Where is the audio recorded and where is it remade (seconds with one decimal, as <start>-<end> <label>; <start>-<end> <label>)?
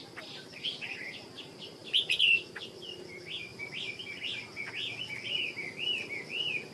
0.0-1.8 remade; 1.8-2.4 recorded; 2.4-3.5 remade; 3.5-6.7 recorded